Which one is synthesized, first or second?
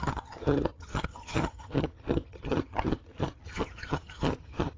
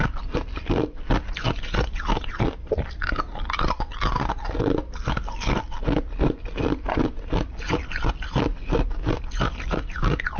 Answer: first